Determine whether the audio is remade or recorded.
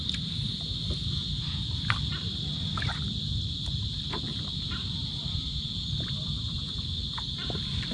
recorded